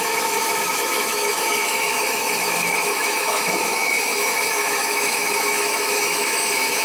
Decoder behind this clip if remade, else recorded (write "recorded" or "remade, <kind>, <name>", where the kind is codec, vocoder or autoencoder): remade, autoencoder, DAC-VAE